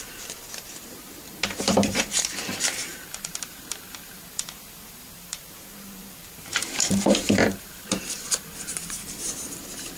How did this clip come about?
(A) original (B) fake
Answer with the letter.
B